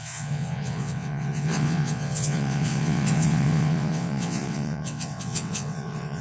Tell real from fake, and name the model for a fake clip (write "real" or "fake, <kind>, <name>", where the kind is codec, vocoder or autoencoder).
fake, vocoder, WaveNeXt